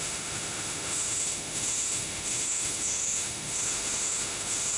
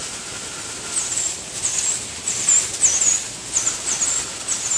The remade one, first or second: first